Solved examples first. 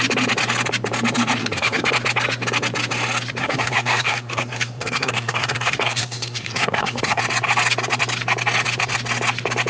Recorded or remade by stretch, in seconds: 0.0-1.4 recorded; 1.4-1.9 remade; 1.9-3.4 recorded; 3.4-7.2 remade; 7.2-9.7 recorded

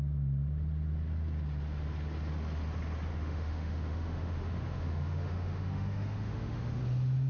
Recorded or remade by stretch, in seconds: 0.0-3.1 recorded; 3.1-6.8 remade; 6.8-7.3 recorded

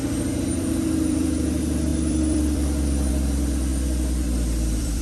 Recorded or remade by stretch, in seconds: 0.0-0.6 recorded; 0.6-5.0 remade